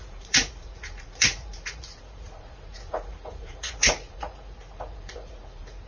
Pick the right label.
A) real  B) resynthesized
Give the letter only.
B